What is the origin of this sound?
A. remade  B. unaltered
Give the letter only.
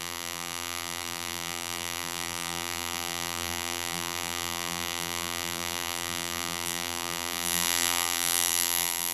A